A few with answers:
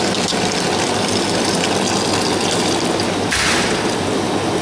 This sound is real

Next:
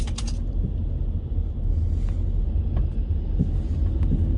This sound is real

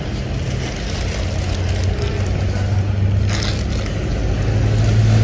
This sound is real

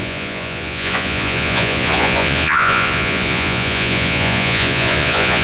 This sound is fake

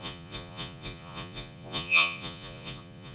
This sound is fake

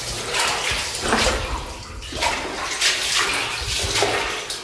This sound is real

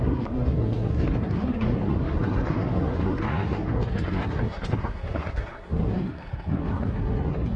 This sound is fake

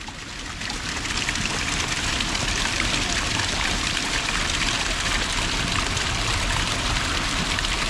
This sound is fake